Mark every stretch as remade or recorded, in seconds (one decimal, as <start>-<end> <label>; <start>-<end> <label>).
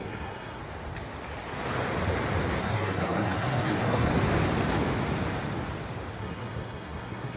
0.0-0.6 remade; 0.6-2.6 recorded; 2.6-4.1 remade; 4.1-6.2 recorded; 6.2-7.4 remade